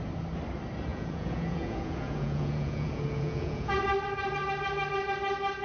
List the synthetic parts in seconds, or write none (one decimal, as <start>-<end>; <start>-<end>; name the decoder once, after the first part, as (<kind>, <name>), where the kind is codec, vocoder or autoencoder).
0.9-3.8 (vocoder, Vocos)